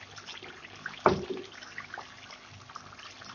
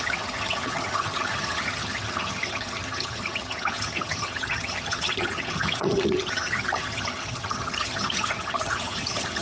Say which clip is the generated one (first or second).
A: second